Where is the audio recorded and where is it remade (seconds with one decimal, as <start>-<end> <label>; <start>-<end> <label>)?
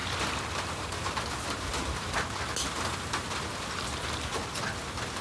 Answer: 0.0-5.2 recorded